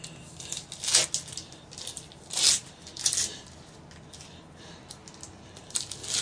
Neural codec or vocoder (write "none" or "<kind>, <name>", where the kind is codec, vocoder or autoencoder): none